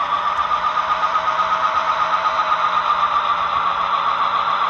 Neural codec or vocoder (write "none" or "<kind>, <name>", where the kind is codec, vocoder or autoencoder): vocoder, BigVGAN v2